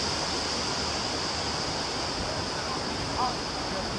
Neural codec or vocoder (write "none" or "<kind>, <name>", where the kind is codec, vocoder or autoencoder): none